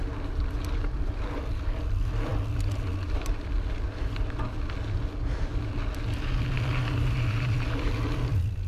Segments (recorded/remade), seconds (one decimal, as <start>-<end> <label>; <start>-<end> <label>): 0.0-8.7 recorded